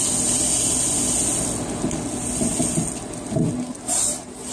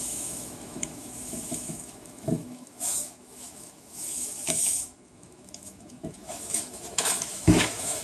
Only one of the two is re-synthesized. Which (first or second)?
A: second